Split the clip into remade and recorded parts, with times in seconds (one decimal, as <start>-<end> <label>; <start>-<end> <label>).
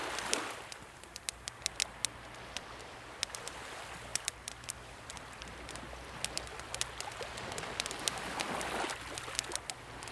0.0-4.1 recorded; 4.1-6.1 remade; 6.1-10.1 recorded